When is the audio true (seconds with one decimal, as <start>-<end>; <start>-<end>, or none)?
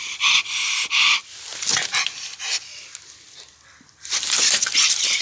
1.2-3.5